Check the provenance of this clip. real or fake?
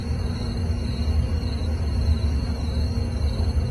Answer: real